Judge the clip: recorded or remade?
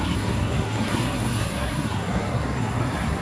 remade